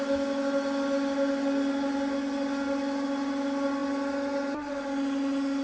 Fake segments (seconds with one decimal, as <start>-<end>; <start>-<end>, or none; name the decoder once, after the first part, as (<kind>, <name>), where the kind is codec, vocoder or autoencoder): none